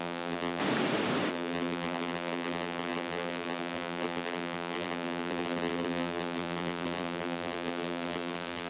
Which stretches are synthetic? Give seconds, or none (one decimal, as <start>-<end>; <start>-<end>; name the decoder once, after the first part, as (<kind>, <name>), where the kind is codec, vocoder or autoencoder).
0.0-0.6 (vocoder, BigVGAN v2); 1.3-8.7

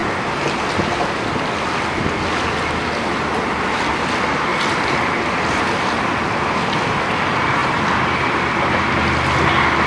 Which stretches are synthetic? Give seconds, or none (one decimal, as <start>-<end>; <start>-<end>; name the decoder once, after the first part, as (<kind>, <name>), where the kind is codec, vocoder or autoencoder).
4.5-5.6 (vocoder, BigVGAN v2); 7.6-8.9

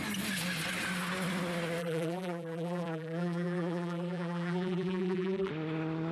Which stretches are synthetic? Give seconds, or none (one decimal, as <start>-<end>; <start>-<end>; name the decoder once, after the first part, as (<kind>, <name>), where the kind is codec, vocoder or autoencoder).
1.8-5.5 (vocoder, BigVGAN v2)